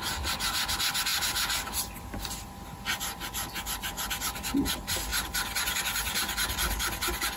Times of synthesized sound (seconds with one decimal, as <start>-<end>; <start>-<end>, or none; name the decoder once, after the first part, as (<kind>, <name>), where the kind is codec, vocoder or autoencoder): 1.1-4.1 (vocoder, BigVGAN v2); 5.1-5.8